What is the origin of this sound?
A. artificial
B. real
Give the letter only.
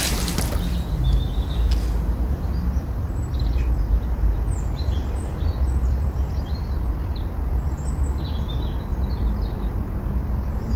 B